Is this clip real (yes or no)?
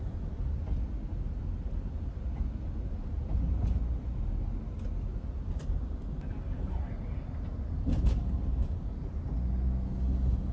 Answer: yes